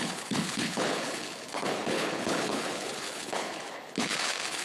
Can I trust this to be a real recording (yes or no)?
no